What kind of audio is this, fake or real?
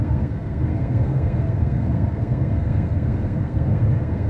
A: fake